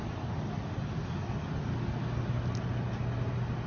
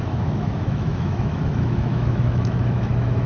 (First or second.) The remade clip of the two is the second